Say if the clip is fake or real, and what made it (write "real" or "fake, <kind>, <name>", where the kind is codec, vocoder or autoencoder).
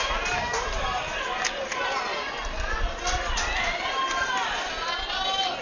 real